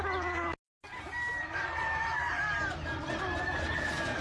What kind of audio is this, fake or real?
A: real